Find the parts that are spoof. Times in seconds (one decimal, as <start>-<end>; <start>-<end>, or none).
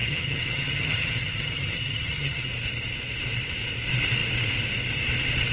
0.0-2.5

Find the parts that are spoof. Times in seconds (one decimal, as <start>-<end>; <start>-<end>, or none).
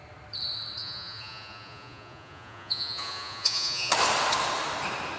0.8-3.9